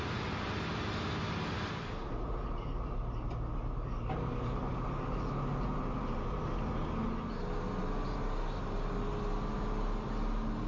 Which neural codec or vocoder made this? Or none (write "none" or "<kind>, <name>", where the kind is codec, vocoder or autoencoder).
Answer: none